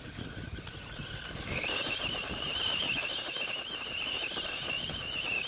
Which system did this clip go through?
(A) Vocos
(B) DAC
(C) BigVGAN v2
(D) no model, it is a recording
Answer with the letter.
C